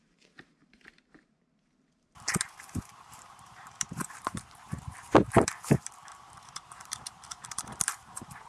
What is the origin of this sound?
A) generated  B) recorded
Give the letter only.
A